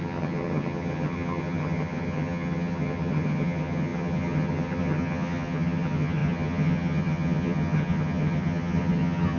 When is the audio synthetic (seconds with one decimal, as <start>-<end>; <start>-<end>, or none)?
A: 0.0-9.4

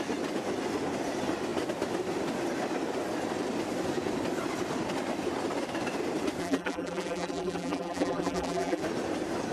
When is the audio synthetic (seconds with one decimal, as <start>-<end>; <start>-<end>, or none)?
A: 6.4-8.8

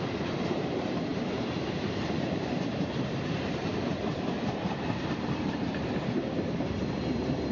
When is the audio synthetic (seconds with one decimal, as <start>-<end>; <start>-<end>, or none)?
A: 0.0-7.5

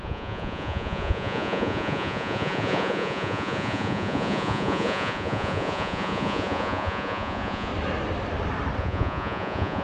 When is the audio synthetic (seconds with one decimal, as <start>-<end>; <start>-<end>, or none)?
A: 0.0-7.7; 8.8-9.8